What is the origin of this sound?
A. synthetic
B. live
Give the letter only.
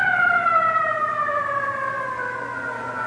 A